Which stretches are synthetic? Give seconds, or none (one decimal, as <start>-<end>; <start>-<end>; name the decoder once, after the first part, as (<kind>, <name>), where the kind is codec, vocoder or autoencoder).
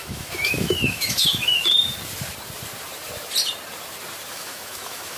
0.0-1.6 (autoencoder, DAC-VAE); 4.3-5.2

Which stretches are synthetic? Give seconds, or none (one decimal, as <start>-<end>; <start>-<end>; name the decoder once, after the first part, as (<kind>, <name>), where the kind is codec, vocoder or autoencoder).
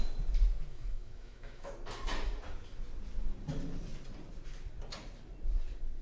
0.7-1.7 (autoencoder, DAC-VAE)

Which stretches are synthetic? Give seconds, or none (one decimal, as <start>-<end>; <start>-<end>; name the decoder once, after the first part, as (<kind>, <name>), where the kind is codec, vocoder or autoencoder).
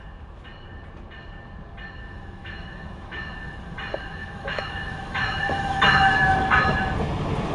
2.4-3.2 (autoencoder, DAC-VAE); 4.2-6.9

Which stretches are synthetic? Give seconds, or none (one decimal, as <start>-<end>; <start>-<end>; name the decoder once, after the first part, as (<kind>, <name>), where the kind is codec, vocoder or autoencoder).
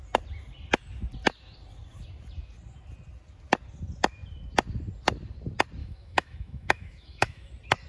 5.8-7.5 (autoencoder, DAC-VAE)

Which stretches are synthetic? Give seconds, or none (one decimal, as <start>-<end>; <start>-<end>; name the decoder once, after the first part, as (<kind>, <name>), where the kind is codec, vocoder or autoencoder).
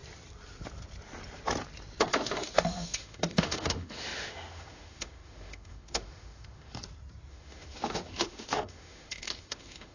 2.0-6.8 (autoencoder, DAC-VAE); 7.3-9.9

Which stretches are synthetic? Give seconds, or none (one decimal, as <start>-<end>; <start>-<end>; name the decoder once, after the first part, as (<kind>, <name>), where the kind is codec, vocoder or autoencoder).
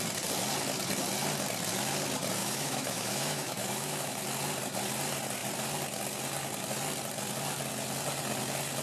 2.4-4.2 (autoencoder, DAC-VAE)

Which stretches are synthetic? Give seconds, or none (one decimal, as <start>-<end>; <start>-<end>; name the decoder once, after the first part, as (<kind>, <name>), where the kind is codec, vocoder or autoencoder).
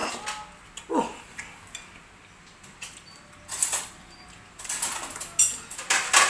none